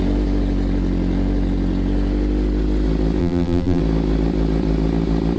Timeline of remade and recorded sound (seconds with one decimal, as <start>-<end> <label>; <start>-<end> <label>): 0.0-3.2 recorded; 3.2-3.8 remade; 3.8-5.4 recorded